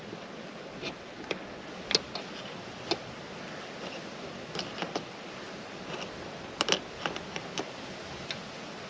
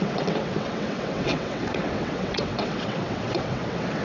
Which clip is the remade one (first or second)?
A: second